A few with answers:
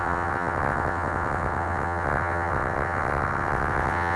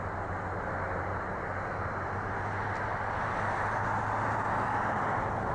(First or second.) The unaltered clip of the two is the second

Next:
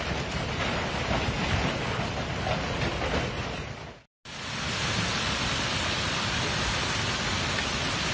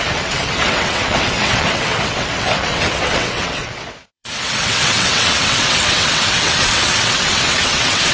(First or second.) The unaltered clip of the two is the first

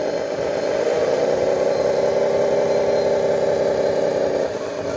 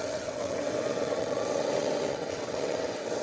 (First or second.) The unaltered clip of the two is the first